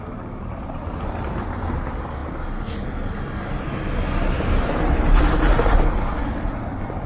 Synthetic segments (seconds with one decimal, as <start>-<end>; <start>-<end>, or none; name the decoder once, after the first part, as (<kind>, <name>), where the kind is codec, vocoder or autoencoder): none